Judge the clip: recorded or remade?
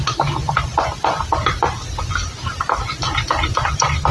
recorded